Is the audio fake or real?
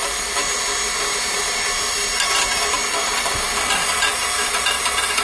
real